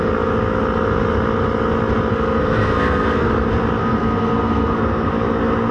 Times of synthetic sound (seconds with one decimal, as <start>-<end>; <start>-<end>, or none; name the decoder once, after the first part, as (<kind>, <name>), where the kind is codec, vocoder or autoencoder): 2.1-3.3 (codec, SNAC); 3.8-5.1